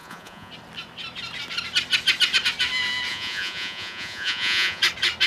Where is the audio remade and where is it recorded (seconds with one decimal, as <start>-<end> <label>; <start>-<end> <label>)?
0.0-0.5 remade; 0.5-3.1 recorded; 3.1-4.8 remade; 4.8-5.3 recorded